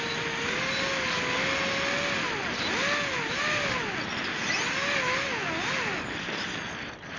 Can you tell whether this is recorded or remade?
recorded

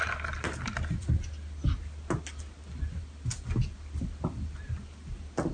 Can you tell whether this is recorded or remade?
recorded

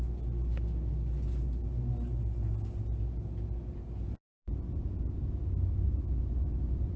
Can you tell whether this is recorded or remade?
recorded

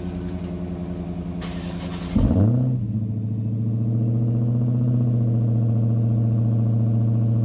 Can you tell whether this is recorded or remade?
recorded